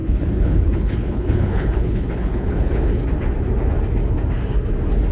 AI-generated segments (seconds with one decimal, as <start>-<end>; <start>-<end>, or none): 0.0-2.9